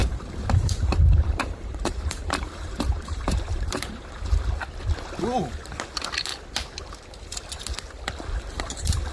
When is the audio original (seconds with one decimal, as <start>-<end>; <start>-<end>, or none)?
4.0-9.1